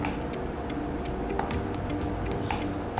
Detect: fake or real real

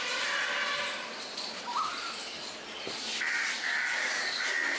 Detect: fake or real real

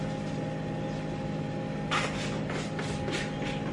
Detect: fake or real real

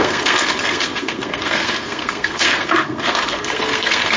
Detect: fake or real fake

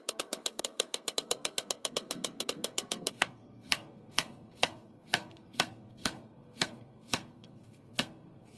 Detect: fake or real fake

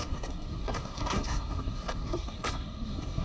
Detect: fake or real fake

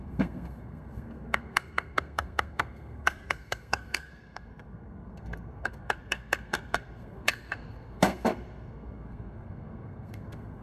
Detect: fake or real fake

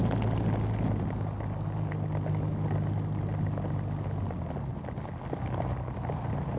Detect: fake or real real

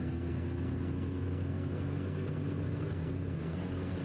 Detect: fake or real fake